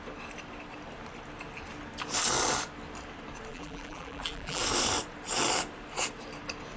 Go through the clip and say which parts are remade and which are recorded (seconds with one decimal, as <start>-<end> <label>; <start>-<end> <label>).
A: 0.0-3.5 recorded; 3.5-4.6 remade; 4.6-6.8 recorded